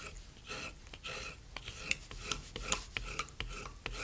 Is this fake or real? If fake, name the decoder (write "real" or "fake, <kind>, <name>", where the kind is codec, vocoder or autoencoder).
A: real